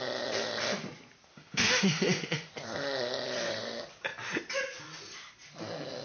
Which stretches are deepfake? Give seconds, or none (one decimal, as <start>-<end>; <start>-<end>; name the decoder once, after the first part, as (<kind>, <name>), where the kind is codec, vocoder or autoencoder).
1.3-2.5 (autoencoder, DAC-VAE)